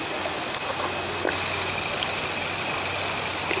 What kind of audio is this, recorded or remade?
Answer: recorded